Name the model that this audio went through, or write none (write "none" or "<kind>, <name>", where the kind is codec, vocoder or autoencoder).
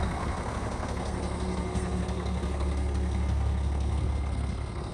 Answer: codec, SNAC